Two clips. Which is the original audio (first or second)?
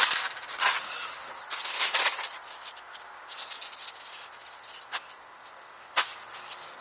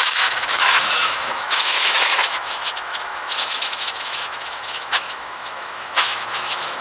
first